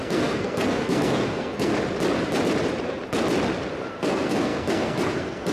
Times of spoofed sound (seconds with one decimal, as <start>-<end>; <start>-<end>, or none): 0.0-1.7; 3.9-5.5